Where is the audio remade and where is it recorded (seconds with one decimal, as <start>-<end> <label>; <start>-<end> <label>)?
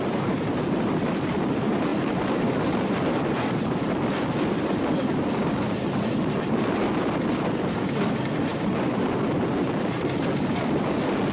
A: 0.0-11.3 remade